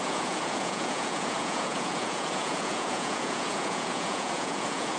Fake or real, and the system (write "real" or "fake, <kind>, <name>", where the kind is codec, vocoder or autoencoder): fake, vocoder, Vocos